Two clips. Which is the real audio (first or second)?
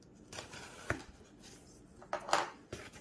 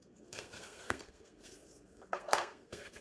first